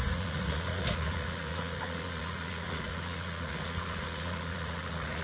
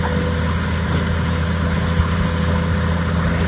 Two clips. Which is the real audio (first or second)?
second